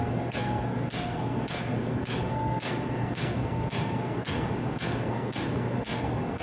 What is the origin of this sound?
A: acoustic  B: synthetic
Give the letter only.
B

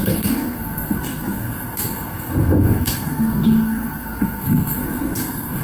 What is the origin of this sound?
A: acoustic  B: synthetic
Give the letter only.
B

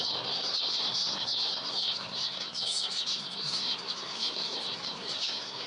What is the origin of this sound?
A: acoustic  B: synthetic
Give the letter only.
B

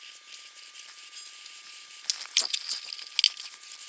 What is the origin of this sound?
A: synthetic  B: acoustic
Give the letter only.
B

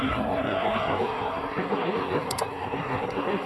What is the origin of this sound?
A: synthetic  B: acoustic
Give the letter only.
A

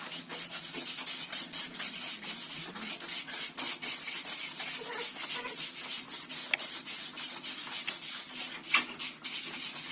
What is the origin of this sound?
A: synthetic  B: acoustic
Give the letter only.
B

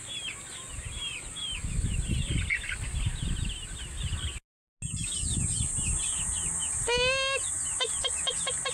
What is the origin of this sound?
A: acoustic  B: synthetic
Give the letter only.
A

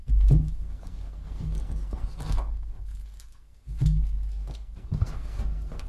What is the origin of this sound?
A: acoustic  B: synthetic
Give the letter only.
B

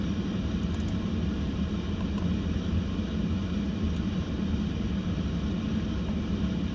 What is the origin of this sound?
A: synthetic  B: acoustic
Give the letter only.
B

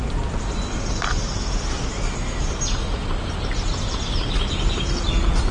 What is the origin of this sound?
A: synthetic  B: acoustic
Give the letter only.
B